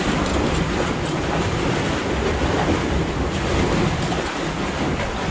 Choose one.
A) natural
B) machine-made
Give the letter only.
A